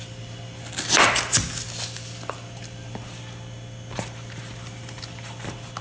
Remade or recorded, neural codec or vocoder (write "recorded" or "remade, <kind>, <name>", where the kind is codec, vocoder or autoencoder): recorded